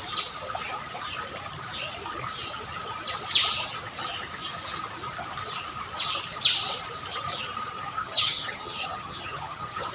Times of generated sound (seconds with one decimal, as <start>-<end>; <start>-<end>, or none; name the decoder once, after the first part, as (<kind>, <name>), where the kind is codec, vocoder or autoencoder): 7.7-9.9 (vocoder, HiFi-GAN)